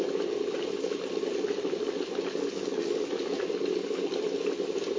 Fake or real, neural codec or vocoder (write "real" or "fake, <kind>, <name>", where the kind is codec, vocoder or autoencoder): real